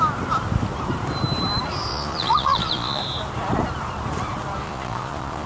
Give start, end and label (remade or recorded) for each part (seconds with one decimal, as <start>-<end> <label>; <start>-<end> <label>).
0.0-1.9 recorded; 1.9-3.0 remade; 3.0-4.6 recorded; 4.6-5.5 remade

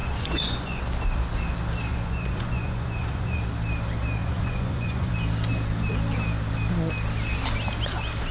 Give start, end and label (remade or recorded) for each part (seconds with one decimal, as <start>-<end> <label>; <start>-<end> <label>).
0.0-0.8 remade; 0.8-1.9 recorded; 1.9-3.4 remade; 3.4-4.2 recorded; 4.2-5.1 remade; 5.1-8.3 recorded

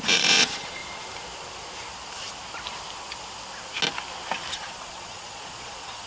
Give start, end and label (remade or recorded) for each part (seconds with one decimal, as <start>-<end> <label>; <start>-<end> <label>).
0.0-0.8 remade; 0.8-4.5 recorded; 4.5-6.1 remade

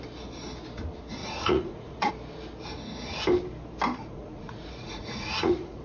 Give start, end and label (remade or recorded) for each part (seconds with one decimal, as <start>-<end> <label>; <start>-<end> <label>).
0.0-1.2 recorded; 1.2-2.1 remade; 2.1-4.0 recorded; 4.0-5.8 remade

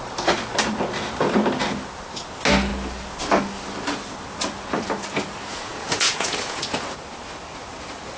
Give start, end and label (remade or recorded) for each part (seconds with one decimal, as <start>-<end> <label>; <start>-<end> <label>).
0.0-5.5 recorded; 5.5-6.6 remade; 6.6-8.2 recorded

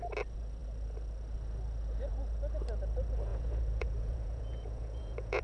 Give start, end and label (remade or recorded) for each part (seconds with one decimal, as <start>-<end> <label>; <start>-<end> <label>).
0.0-3.3 recorded; 3.3-5.4 remade

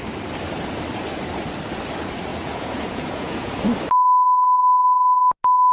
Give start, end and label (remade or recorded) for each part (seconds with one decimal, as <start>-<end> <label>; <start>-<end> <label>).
0.0-2.3 recorded; 2.3-3.6 remade; 3.6-5.7 recorded

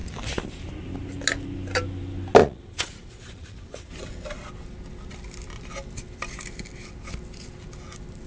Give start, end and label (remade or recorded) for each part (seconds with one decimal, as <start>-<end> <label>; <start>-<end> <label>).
0.0-2.4 recorded; 2.4-3.9 remade; 3.9-8.3 recorded